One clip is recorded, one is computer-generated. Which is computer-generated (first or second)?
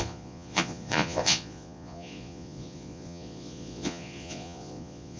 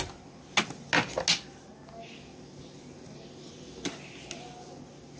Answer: first